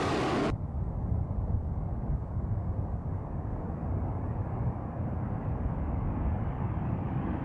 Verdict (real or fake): fake